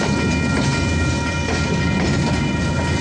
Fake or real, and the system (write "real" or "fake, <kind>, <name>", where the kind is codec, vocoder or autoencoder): real